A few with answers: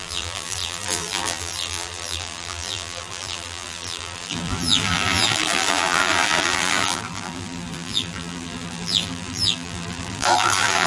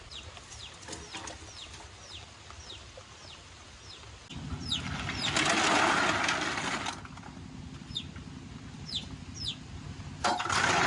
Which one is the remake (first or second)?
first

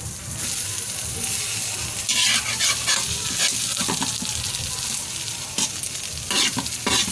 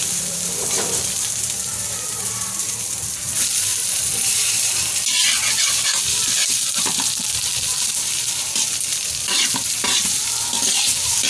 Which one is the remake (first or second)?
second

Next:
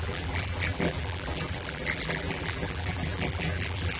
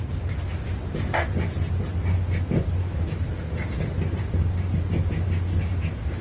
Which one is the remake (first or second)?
first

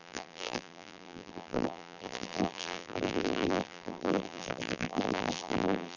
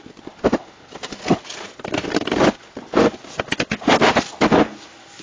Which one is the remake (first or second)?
first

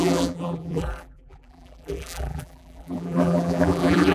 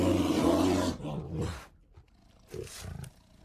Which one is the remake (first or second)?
first